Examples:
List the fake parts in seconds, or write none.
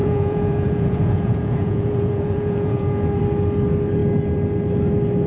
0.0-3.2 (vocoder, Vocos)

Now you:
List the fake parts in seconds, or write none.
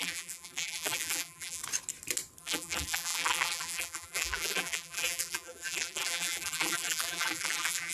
0.0-1.6 (vocoder, BigVGAN v2); 2.4-7.9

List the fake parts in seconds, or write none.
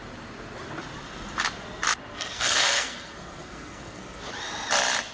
2.1-4.2 (codec, SNAC)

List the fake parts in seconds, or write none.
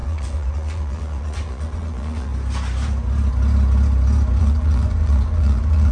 0.0-2.3 (vocoder, Vocos); 4.4-5.9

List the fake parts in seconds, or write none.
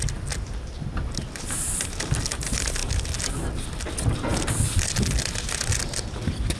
none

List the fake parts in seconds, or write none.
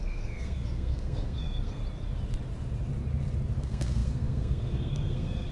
0.0-1.8 (codec, SNAC); 3.6-5.5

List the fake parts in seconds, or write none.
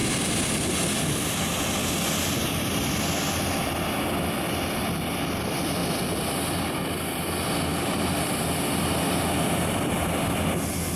5.8-7.3 (vocoder, BigVGAN v2)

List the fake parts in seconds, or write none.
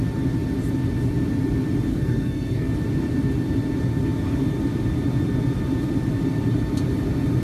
1.9-2.7 (codec, SNAC)